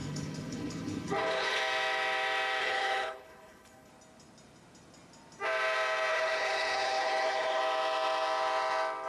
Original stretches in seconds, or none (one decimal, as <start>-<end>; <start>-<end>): 1.6-2.6; 3.9-6.1; 7.6-9.1